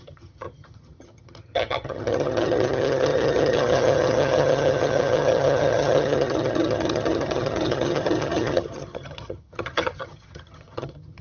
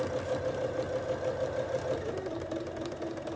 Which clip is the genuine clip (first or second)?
second